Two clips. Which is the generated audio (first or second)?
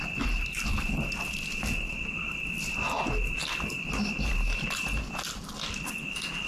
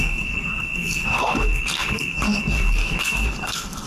second